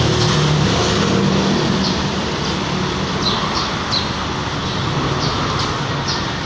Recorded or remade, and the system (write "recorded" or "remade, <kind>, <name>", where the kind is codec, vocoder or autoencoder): recorded